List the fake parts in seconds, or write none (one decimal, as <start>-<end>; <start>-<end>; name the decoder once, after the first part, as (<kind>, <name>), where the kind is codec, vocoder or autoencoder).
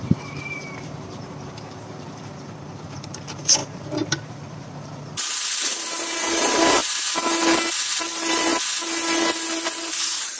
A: 0.0-6.8 (vocoder, BigVGAN v2); 8.0-8.5; 9.9-10.4